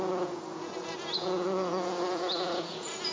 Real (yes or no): no